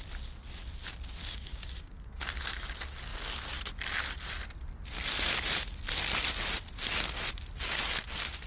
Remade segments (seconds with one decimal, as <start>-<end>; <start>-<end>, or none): 1.2-2.0